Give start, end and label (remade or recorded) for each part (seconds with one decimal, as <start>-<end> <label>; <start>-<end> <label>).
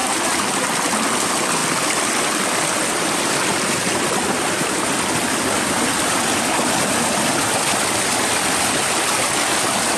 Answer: 0.0-10.0 recorded